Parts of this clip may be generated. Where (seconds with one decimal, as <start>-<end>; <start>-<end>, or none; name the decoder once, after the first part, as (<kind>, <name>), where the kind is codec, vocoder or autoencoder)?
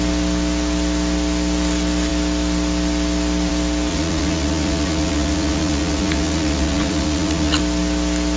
3.9-7.6 (vocoder, Vocos)